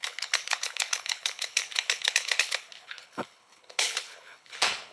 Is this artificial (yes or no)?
yes